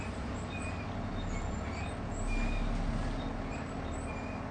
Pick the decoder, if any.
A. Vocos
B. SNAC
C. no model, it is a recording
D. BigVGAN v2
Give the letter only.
C